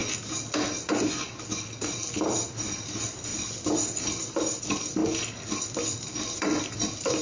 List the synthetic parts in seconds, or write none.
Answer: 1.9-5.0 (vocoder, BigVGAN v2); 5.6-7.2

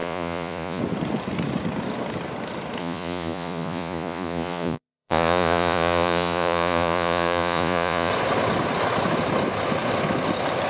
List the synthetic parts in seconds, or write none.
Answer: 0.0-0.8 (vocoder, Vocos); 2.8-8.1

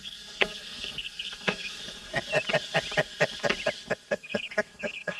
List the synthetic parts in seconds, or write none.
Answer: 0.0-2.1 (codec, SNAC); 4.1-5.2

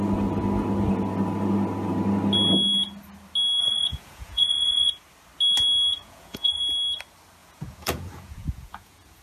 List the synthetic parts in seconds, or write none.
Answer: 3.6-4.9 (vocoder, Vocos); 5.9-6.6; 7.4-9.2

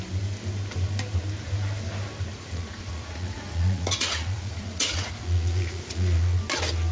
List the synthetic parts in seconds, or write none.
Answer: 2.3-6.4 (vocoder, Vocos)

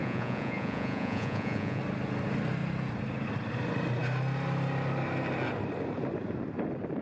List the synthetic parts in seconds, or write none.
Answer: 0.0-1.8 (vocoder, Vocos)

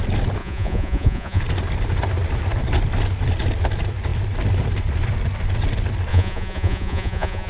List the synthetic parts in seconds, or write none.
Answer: 0.4-1.4 (vocoder, Vocos); 6.1-7.5

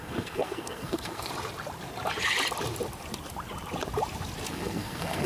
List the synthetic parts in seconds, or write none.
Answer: 0.0-1.3 (codec, SNAC); 4.5-5.3